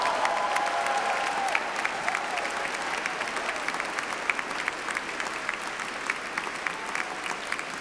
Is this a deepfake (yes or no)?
no